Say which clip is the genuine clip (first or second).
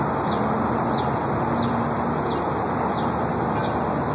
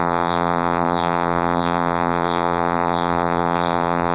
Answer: first